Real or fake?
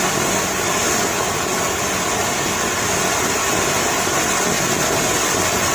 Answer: real